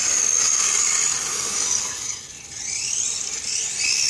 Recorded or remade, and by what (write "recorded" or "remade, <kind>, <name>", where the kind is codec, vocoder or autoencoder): recorded